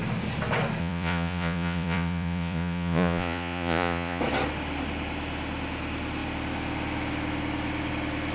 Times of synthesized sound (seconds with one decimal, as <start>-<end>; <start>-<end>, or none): 0.8-4.2